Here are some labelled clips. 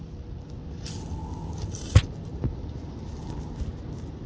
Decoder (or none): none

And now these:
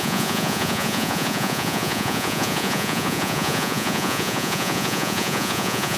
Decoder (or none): vocoder, Vocos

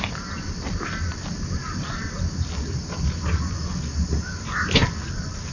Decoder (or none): none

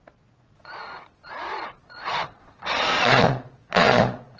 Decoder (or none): vocoder, Vocos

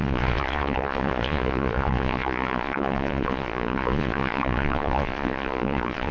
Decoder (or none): vocoder, Vocos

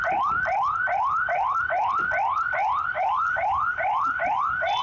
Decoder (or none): none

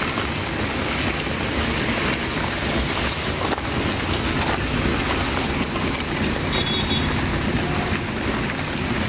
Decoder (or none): none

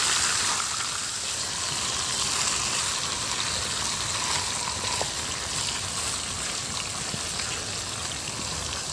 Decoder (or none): none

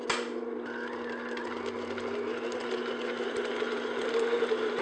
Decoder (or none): none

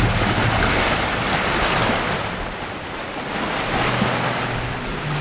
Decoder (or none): none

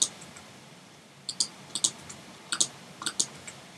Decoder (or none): none